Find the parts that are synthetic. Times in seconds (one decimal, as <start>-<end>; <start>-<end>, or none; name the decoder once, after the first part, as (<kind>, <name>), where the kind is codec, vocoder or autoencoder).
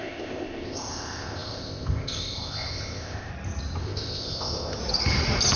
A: 0.0-3.3 (codec, ZipCodec); 3.8-4.8